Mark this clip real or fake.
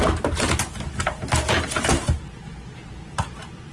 real